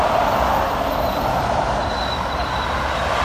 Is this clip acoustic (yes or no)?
yes